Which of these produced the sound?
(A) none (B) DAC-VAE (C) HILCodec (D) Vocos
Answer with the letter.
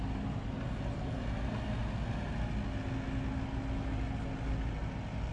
A